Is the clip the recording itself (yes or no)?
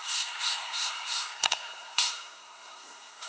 no